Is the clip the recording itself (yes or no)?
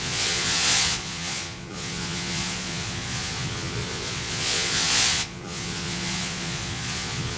no